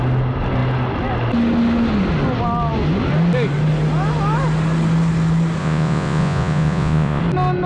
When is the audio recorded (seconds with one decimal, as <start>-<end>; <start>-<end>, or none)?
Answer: 0.0-5.6; 7.2-7.7